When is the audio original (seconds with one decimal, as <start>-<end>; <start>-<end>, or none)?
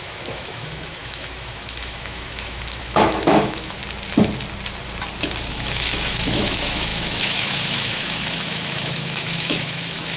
3.8-5.5